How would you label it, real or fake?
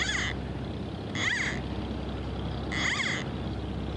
real